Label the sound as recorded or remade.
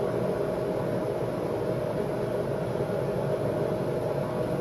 recorded